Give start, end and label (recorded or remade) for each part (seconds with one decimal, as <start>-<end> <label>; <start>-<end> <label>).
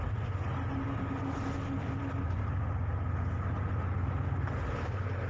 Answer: 0.0-5.3 recorded